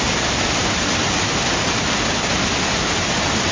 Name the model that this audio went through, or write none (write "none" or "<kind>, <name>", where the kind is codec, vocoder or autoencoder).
none